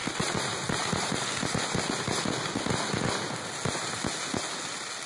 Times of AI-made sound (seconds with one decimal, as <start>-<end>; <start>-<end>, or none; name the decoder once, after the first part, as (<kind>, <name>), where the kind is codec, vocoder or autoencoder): none